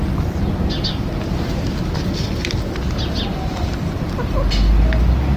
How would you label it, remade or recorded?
recorded